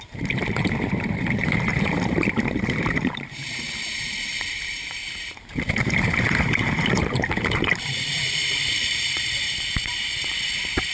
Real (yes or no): no